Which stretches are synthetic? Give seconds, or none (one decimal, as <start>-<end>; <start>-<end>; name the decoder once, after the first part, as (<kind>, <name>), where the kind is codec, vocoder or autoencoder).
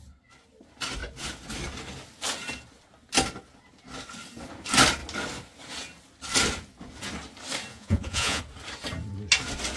7.7-8.4 (vocoder, Vocos)